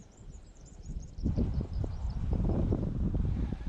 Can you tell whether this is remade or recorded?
remade